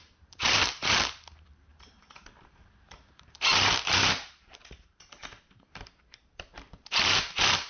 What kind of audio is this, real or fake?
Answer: fake